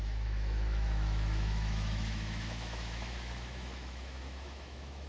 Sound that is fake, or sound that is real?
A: fake